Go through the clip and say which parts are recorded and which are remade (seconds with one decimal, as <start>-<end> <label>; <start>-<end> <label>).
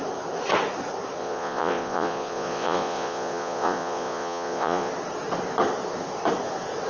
0.0-1.2 recorded; 1.2-4.9 remade; 4.9-6.9 recorded